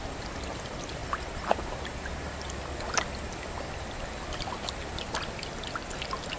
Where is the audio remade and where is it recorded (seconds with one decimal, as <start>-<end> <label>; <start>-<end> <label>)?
0.0-6.4 recorded